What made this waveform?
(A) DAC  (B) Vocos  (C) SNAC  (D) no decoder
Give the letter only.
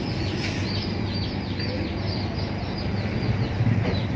D